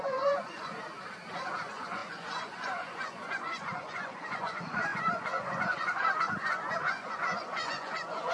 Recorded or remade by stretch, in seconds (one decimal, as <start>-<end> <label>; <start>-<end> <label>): 0.0-0.7 remade; 0.7-1.4 recorded; 1.4-8.3 remade